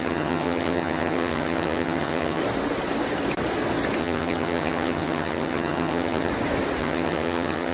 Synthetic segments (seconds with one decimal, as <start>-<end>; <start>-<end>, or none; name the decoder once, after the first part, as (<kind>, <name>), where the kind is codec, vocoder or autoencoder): 0.0-2.4 (vocoder, HiFi-GAN); 4.0-6.3; 6.8-7.7

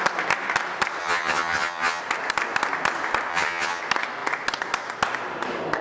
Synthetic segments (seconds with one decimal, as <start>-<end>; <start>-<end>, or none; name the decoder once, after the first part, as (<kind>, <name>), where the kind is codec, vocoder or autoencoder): 1.0-2.0 (vocoder, HiFi-GAN); 3.3-3.8

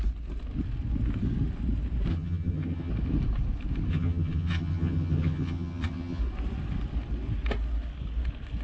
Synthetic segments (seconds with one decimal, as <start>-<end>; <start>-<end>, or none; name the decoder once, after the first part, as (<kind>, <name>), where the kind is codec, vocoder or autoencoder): 2.1-2.9 (vocoder, HiFi-GAN); 3.9-6.2

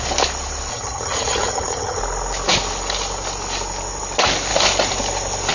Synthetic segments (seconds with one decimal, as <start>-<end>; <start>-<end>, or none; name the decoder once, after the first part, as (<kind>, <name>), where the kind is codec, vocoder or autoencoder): 0.7-2.0 (vocoder, HiFi-GAN)

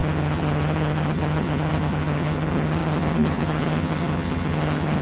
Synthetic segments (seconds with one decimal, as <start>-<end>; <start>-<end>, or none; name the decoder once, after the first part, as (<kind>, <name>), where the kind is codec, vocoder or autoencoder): 0.0-5.0 (vocoder, HiFi-GAN)

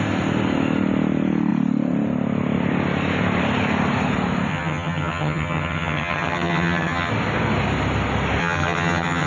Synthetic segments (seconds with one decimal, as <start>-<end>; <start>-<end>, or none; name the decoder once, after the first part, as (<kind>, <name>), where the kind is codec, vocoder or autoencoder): 4.5-7.1 (vocoder, HiFi-GAN); 8.4-9.3

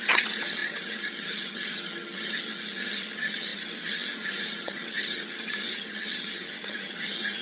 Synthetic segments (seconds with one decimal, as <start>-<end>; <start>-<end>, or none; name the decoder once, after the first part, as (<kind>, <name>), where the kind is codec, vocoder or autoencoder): 0.0-7.4 (vocoder, HiFi-GAN)

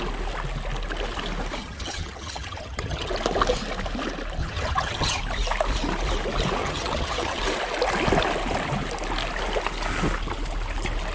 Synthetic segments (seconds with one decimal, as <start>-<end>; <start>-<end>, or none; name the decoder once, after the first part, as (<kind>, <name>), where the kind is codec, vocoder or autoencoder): 1.6-3.1 (vocoder, HiFi-GAN); 4.4-5.2; 6.6-7.4